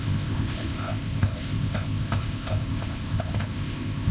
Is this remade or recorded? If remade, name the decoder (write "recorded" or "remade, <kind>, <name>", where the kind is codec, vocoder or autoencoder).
remade, codec, ZipCodec